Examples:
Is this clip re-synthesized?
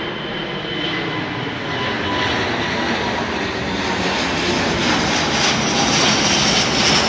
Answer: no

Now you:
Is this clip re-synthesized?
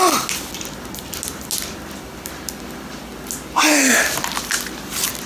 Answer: no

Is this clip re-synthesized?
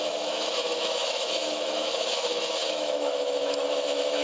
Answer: yes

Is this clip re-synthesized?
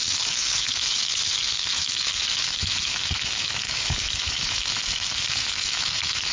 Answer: yes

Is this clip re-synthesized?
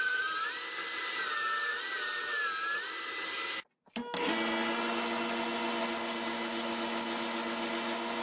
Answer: no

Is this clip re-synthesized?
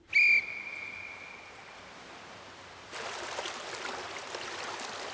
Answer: no